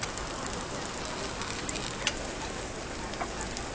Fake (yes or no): no